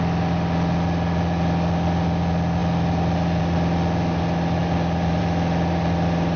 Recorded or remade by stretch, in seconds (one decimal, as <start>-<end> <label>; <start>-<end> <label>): 0.0-4.6 recorded; 4.6-5.2 remade; 5.2-6.4 recorded